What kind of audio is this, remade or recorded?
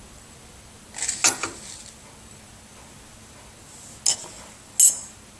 recorded